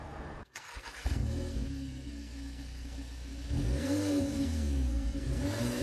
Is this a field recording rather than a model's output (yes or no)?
no